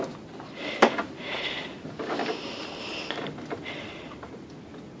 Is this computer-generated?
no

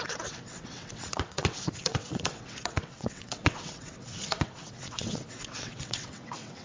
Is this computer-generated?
yes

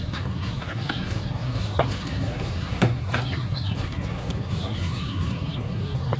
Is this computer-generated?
yes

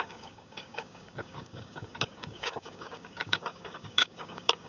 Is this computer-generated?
yes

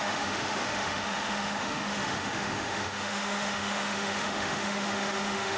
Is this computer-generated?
yes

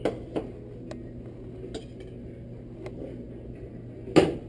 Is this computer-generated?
no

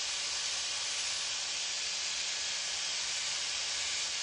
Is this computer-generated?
no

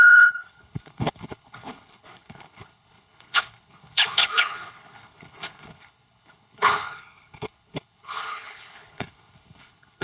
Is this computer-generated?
yes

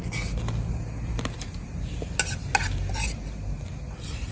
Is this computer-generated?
no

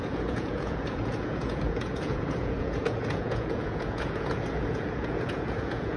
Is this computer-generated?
yes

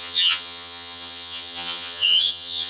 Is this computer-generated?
yes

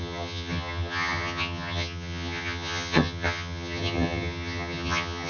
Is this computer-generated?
yes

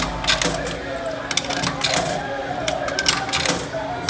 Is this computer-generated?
no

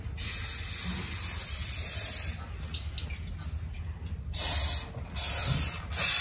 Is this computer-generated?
no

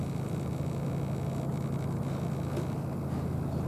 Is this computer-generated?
no